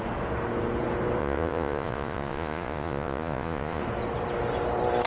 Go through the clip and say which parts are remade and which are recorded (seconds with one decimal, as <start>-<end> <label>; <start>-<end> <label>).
0.0-1.2 recorded; 1.2-3.8 remade; 3.8-5.1 recorded